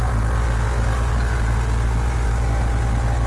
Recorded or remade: recorded